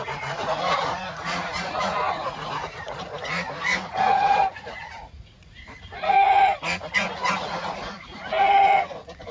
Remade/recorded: remade